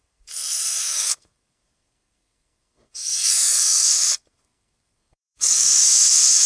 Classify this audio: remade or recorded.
remade